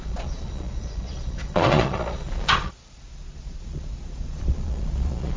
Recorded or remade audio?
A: remade